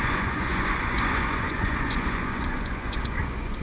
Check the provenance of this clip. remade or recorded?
remade